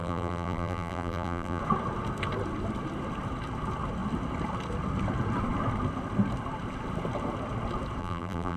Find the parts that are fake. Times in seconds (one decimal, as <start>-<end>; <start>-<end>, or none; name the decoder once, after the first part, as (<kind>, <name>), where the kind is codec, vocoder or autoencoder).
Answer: 0.0-1.6 (vocoder, BigVGAN v2); 8.0-8.6